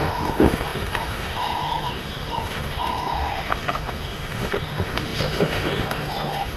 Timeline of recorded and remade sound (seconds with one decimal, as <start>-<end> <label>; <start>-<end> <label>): 0.0-6.6 remade